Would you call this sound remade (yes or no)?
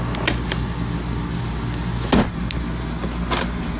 no